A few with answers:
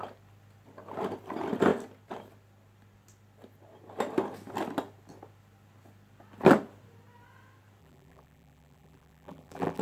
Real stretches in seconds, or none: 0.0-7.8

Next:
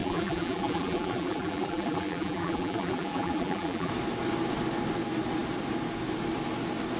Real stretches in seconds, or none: 3.9-7.0